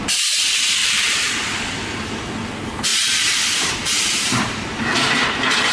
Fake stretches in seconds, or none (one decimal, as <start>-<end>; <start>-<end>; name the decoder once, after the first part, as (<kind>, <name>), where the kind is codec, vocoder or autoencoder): 0.8-1.3 (vocoder, BigVGAN v2)